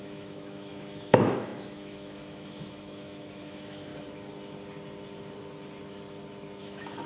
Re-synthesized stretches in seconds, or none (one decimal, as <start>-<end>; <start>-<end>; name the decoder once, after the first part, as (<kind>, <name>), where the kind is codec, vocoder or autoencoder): 0.0-3.9 (autoencoder, DAC-VAE); 6.6-7.1